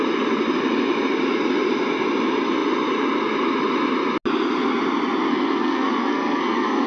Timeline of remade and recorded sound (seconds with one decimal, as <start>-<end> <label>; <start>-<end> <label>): 0.0-5.3 recorded; 5.3-6.9 remade